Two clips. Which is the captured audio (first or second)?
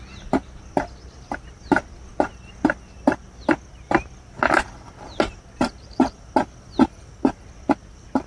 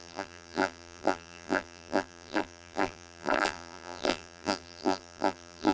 first